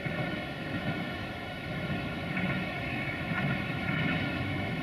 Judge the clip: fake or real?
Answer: fake